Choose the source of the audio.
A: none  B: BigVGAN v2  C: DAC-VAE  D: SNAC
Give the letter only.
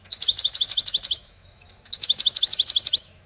C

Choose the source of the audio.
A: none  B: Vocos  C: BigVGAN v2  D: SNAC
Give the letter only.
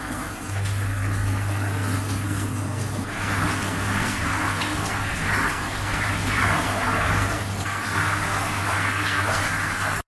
D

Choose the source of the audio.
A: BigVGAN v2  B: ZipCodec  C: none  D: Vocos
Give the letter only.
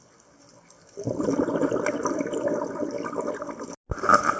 C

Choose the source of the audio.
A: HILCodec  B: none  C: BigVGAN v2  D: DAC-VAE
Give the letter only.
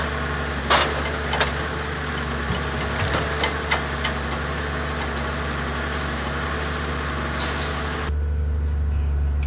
B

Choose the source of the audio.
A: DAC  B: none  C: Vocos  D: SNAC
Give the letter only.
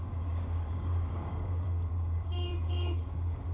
A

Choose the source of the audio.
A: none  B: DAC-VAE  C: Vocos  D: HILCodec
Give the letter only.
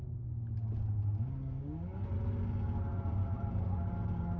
A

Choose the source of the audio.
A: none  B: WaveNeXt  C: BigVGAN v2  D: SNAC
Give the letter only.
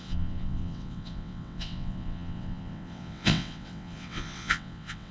B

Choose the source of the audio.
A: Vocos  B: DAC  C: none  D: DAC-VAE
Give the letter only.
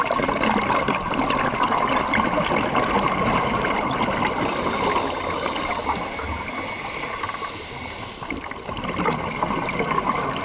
C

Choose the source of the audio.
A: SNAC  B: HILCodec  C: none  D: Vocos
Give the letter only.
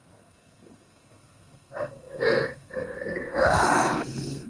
A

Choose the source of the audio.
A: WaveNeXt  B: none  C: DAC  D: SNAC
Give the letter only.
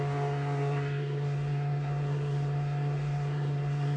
D